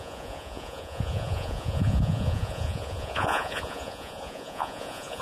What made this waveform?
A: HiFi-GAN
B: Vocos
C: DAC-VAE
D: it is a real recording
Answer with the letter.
B